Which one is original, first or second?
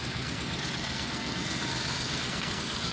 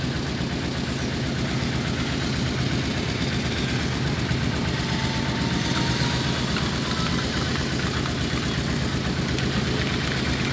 second